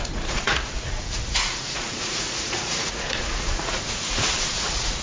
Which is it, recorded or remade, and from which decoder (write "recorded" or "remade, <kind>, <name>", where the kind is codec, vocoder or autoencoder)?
remade, vocoder, Vocos